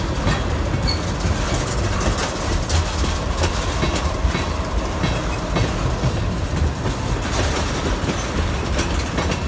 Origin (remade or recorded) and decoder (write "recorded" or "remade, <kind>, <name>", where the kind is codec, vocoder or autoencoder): recorded